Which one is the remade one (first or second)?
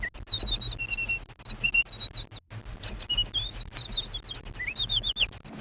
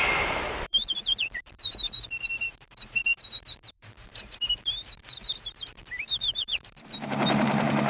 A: second